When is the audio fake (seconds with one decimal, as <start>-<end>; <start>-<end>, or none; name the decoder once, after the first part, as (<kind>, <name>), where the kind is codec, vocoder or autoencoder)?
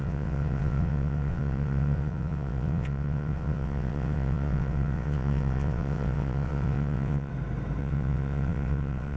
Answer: 0.0-7.3 (vocoder, WaveNeXt); 7.8-9.2